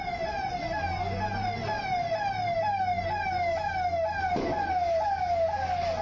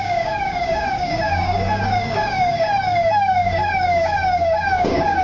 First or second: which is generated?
second